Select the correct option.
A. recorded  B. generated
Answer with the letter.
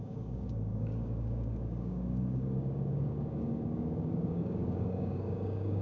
B